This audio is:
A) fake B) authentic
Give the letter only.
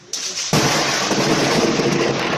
A